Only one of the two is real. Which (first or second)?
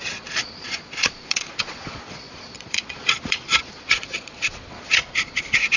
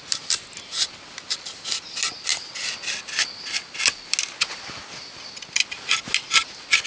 second